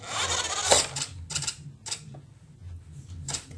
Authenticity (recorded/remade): recorded